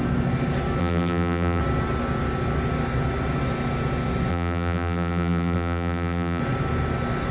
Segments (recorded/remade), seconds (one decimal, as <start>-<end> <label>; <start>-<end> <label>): 0.0-0.8 recorded; 0.8-1.6 remade; 1.6-4.3 recorded; 4.3-6.4 remade; 6.4-7.3 recorded